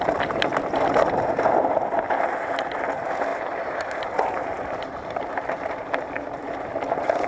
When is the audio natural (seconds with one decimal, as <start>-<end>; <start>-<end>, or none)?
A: 0.0-3.3; 6.5-7.3